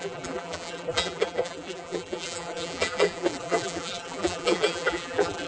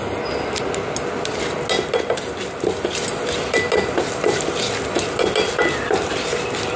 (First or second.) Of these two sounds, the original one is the second